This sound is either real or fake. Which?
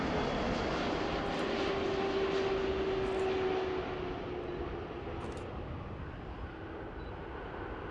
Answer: real